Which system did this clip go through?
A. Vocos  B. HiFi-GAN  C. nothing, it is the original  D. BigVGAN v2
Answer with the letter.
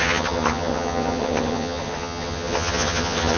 B